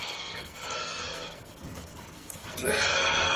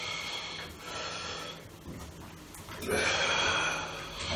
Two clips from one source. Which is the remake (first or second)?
first